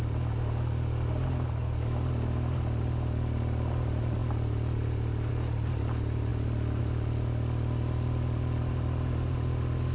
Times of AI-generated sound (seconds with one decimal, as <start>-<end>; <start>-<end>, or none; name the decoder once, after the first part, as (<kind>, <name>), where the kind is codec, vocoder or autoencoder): none